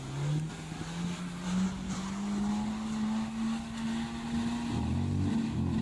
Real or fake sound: real